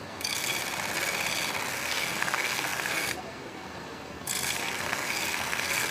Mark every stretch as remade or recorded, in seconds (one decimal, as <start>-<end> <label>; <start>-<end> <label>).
0.0-0.5 remade; 0.5-1.7 recorded; 1.7-5.9 remade